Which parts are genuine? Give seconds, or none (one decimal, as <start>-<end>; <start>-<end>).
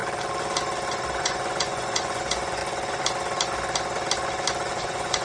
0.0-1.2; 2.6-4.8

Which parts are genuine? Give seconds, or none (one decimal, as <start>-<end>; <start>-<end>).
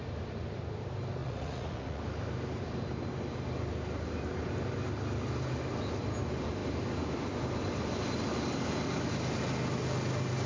0.0-1.2; 2.0-10.5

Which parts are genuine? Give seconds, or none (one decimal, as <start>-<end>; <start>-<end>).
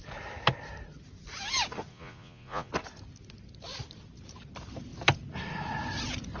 0.0-1.9; 2.7-6.4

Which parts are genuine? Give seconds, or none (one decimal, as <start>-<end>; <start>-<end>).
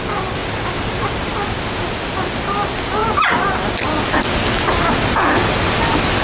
0.0-6.2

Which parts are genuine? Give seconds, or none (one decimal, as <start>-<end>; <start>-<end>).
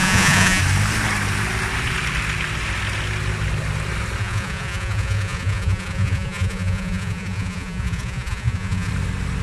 0.6-4.2; 8.9-9.4